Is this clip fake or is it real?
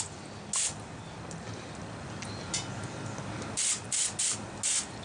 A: real